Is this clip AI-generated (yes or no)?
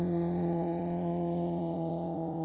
yes